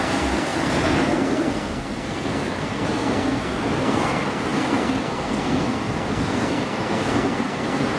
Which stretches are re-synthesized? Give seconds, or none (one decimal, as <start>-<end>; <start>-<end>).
0.0-8.0